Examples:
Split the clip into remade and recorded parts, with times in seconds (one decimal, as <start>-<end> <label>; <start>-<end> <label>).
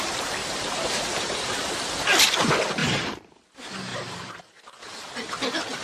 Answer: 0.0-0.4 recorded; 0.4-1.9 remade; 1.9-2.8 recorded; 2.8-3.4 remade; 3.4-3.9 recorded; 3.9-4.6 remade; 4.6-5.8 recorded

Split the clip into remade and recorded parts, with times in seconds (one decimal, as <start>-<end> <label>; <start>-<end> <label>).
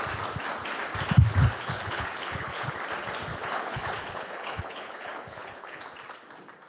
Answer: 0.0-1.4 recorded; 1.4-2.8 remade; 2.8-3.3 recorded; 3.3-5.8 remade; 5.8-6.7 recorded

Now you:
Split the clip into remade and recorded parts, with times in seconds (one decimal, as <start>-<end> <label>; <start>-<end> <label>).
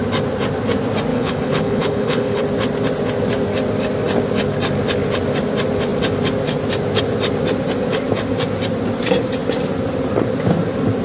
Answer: 0.0-1.1 recorded; 1.1-2.4 remade; 2.4-11.0 recorded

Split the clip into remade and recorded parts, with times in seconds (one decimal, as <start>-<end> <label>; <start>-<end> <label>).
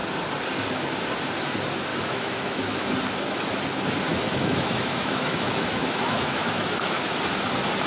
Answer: 0.0-1.9 recorded; 1.9-2.9 remade; 2.9-4.1 recorded; 4.1-7.1 remade; 7.1-7.9 recorded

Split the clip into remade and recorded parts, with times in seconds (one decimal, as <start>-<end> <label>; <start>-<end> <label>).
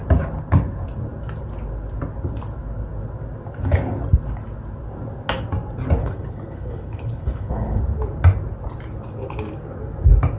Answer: 0.0-6.0 recorded; 6.0-7.8 remade; 7.8-10.4 recorded